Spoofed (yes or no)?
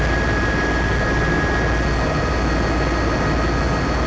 no